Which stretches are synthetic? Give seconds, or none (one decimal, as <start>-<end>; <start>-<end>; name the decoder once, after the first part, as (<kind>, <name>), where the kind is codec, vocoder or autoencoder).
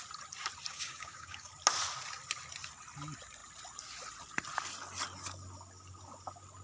0.7-1.5 (codec, DAC)